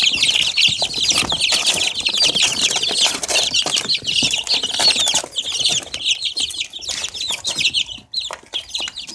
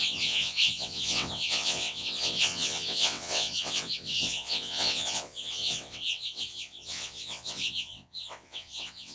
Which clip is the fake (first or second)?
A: second